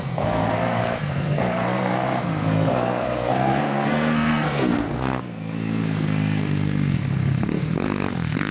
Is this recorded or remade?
remade